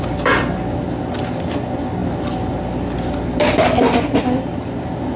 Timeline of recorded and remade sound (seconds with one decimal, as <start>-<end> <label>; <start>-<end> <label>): 0.0-5.2 recorded